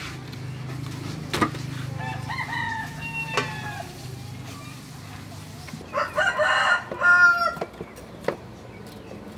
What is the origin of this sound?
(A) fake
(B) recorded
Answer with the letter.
B